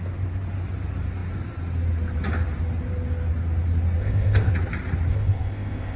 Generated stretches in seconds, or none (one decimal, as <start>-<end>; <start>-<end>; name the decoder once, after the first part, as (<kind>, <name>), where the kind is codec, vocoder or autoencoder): 4.0-4.5 (codec, ZipCodec); 5.1-6.0